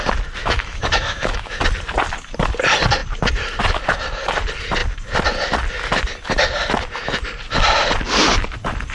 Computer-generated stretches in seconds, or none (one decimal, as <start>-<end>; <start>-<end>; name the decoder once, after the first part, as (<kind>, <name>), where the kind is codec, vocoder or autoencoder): 0.4-1.6 (autoencoder, DAC-VAE)